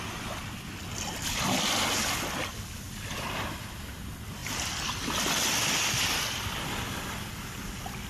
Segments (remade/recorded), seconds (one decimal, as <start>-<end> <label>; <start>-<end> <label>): 0.0-8.1 recorded